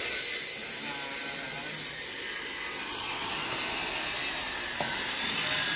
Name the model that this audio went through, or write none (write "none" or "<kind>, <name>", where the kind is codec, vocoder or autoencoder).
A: none